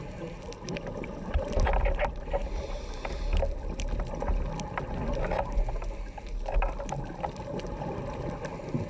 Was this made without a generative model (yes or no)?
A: yes